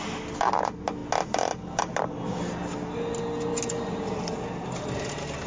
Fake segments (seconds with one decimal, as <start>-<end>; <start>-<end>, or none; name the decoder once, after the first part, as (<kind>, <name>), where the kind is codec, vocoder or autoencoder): none